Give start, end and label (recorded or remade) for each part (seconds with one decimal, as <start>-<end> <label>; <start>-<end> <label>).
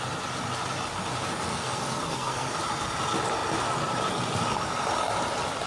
0.0-1.5 recorded; 1.5-2.5 remade; 2.5-5.7 recorded